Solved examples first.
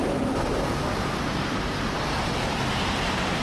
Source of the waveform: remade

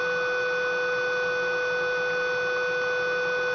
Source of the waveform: recorded